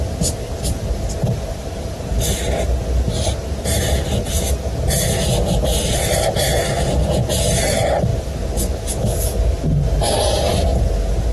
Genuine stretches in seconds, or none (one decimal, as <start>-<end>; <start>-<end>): 0.0-11.3